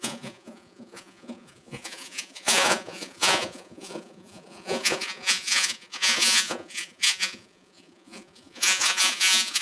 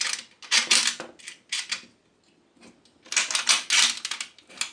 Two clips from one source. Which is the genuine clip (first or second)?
second